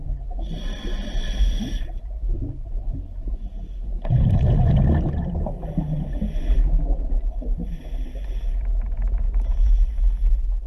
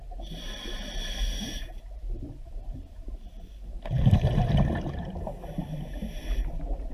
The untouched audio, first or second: first